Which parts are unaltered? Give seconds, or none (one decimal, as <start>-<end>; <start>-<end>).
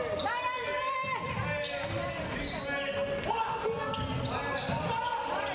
0.0-5.5